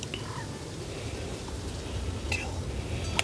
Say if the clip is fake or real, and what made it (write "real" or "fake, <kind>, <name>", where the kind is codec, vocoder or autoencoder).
real